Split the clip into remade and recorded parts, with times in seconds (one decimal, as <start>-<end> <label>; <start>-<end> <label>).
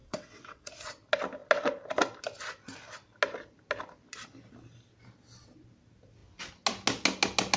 0.0-0.7 remade; 0.7-7.6 recorded